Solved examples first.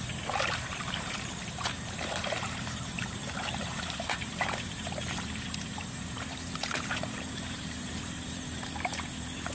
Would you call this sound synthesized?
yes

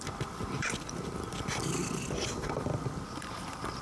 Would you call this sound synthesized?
yes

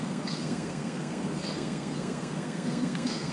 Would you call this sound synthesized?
yes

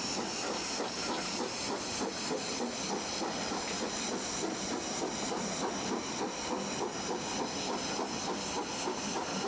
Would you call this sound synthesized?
no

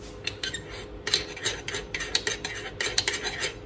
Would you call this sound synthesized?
no